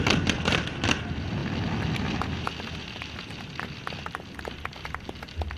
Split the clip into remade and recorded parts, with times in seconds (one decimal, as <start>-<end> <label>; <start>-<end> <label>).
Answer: 0.0-5.6 recorded